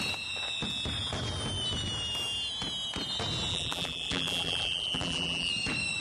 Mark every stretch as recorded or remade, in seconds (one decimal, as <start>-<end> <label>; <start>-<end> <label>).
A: 0.0-3.5 recorded; 3.5-5.5 remade; 5.5-6.0 recorded